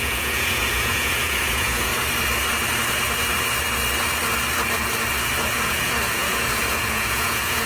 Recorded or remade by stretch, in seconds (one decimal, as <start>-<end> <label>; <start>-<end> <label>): 0.0-1.9 remade; 1.9-5.5 recorded; 5.5-7.7 remade